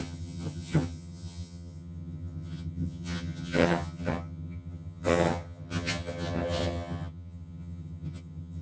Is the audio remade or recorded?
remade